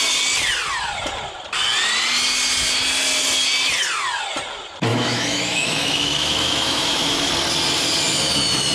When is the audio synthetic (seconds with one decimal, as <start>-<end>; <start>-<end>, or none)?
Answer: 4.9-7.3